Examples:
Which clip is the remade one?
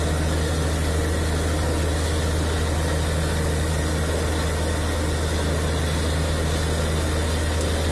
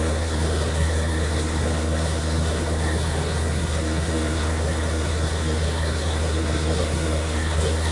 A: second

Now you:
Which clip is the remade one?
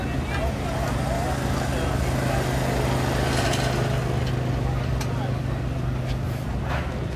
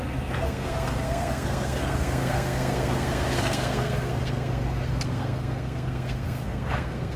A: second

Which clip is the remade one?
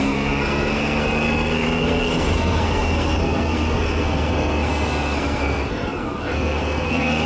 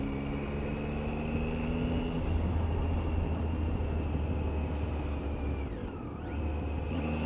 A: first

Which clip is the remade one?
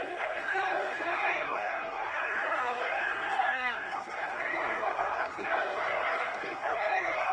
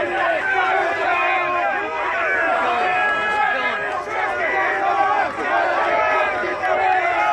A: first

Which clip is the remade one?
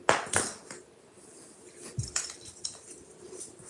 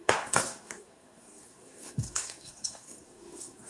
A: second